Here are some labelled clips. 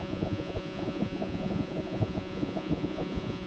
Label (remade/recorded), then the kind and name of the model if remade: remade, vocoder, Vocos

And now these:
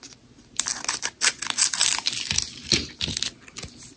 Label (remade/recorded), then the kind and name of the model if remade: recorded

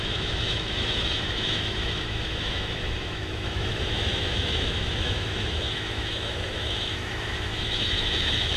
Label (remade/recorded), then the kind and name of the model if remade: remade, autoencoder, DAC-VAE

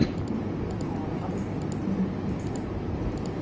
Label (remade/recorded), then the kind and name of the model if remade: recorded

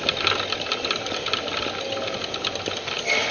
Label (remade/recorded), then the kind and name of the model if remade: recorded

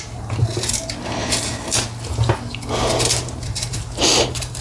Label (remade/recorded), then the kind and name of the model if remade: recorded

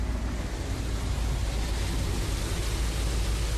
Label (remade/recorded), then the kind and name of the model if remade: recorded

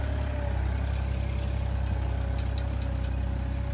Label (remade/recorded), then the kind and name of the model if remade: recorded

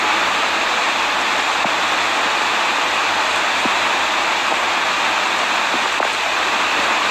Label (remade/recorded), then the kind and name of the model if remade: recorded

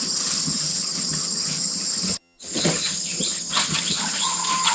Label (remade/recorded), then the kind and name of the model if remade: remade, vocoder, HiFi-GAN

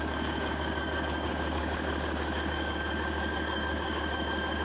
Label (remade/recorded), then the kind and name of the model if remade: remade, codec, DAC